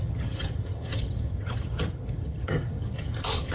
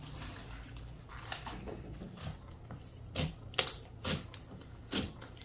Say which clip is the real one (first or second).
second